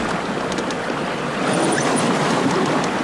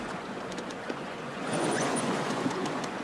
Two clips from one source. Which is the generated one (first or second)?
second